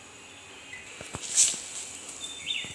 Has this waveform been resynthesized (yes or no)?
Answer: no